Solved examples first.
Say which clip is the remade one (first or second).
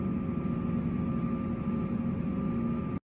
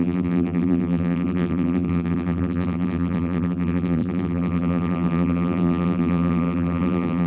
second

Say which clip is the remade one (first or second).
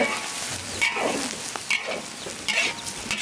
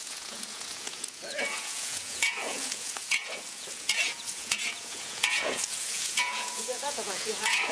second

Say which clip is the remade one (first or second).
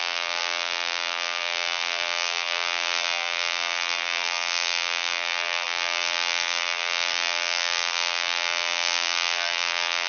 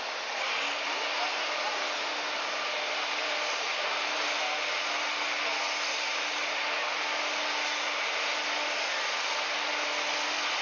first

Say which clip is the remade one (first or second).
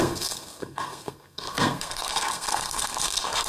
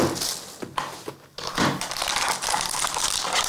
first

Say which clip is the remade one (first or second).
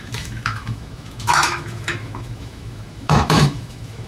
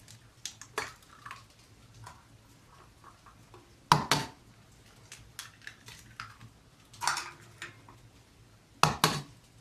first